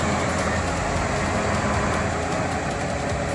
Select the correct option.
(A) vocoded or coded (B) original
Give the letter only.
B